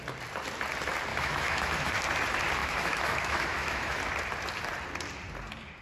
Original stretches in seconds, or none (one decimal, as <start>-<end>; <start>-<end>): 0.0-1.1; 1.9-2.6; 4.0-5.8